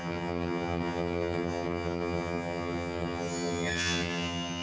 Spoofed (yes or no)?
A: yes